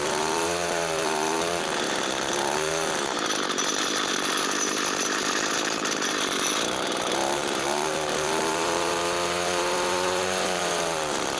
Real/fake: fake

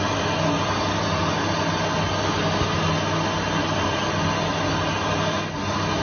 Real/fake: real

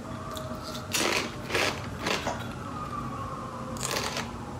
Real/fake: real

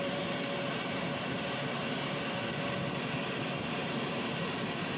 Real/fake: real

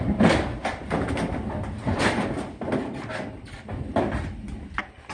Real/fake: real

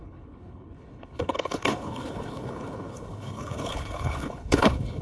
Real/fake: fake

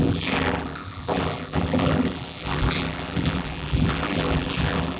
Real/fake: fake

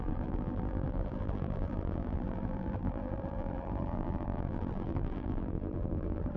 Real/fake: fake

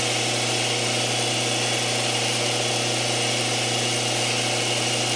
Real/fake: real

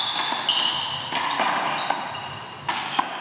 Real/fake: real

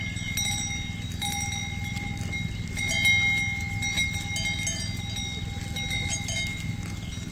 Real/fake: real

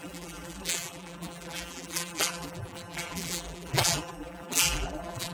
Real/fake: fake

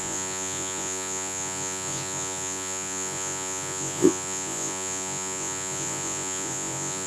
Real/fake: fake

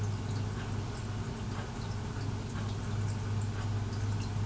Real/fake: real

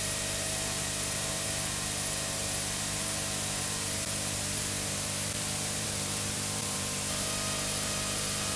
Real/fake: fake